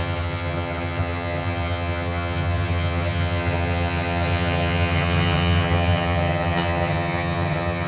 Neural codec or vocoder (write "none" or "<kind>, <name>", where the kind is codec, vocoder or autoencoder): vocoder, HiFi-GAN